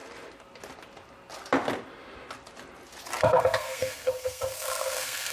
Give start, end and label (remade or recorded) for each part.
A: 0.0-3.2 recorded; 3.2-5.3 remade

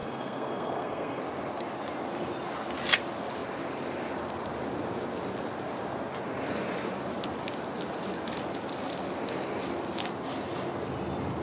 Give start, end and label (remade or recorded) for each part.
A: 0.0-1.2 remade; 1.2-11.4 recorded

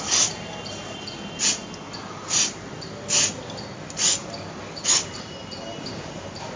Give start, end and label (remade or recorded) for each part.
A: 0.0-5.7 recorded; 5.7-6.6 remade

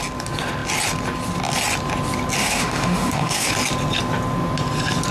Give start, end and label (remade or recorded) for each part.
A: 0.0-2.4 recorded; 2.4-3.5 remade; 3.5-5.1 recorded

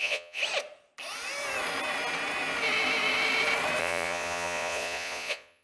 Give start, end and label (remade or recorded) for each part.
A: 0.0-0.4 remade; 0.4-3.8 recorded; 3.8-5.6 remade

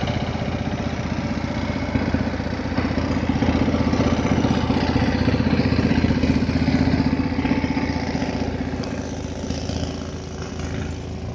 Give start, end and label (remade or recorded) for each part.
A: 0.0-11.3 recorded

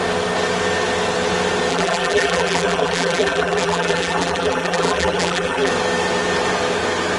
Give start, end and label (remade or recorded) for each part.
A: 0.0-1.7 recorded; 1.7-5.7 remade; 5.7-7.2 recorded

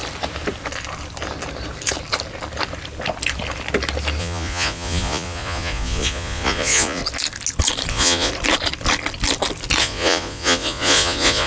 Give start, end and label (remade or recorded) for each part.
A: 0.0-4.2 recorded; 4.2-7.0 remade; 7.0-7.9 recorded; 7.9-8.3 remade; 8.3-9.8 recorded; 9.8-11.5 remade